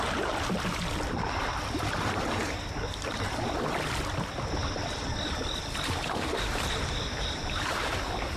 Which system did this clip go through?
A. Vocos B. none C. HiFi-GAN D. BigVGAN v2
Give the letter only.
D